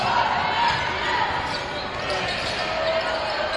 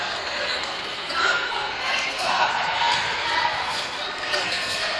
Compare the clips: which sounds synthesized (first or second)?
second